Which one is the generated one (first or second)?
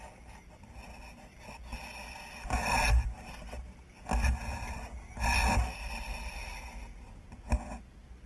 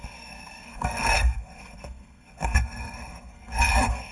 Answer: second